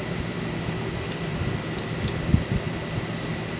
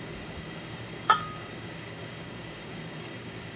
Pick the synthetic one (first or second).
second